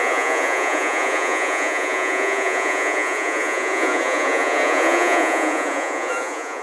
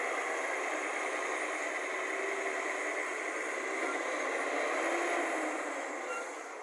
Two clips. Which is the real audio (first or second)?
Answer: second